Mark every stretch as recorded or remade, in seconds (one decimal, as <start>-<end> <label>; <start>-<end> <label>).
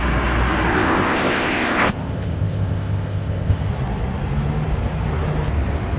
0.0-0.7 recorded; 0.7-3.7 remade; 3.7-6.0 recorded